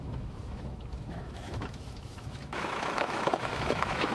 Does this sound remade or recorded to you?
remade